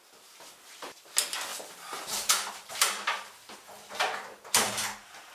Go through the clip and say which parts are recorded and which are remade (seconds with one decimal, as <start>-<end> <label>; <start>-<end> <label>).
0.0-1.5 recorded; 1.5-4.7 remade; 4.7-5.3 recorded